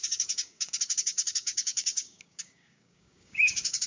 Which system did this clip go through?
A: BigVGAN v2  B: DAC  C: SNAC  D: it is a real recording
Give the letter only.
B